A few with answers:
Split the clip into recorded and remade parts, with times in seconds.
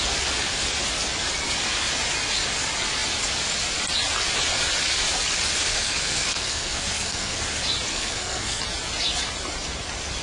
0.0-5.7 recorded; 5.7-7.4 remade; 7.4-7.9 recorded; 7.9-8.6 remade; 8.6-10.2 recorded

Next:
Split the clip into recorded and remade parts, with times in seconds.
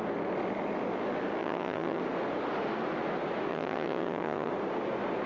0.0-1.4 recorded; 1.4-2.0 remade; 2.0-3.5 recorded; 3.5-4.5 remade; 4.5-5.3 recorded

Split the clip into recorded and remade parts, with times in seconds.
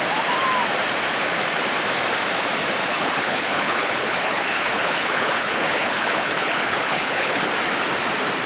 0.0-2.8 recorded; 2.8-7.5 remade; 7.5-8.5 recorded